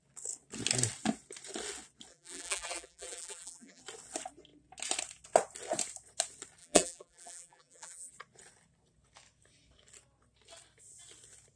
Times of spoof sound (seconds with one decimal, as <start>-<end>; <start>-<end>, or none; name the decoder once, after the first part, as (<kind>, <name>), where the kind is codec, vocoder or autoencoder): 2.1-3.8 (vocoder, BigVGAN v2); 6.6-8.1